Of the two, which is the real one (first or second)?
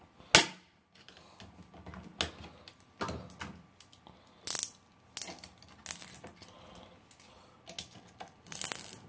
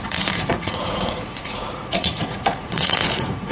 first